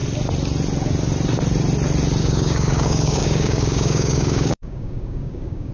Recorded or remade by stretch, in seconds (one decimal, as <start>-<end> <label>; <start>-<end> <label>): 0.0-2.2 recorded; 2.2-5.7 remade

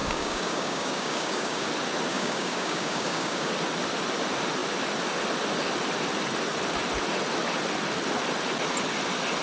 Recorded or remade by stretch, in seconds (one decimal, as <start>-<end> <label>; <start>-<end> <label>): 0.0-1.7 remade; 1.7-2.1 recorded; 2.1-3.5 remade; 3.5-9.4 recorded

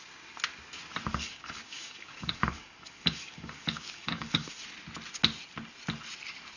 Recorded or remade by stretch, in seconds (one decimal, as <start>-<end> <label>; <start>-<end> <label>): 0.0-1.1 recorded; 1.1-4.6 remade; 4.6-6.6 recorded

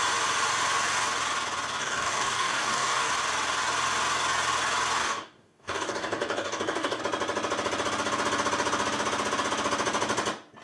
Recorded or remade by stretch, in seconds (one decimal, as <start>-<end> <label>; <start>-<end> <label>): 0.0-1.8 recorded; 1.8-3.1 remade; 3.1-5.0 recorded; 5.0-7.0 remade; 7.0-10.6 recorded

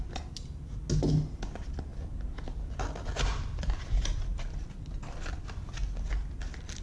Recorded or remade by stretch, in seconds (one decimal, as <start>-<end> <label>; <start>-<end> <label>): 0.0-6.8 recorded